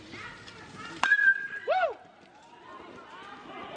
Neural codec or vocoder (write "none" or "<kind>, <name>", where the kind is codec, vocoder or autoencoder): none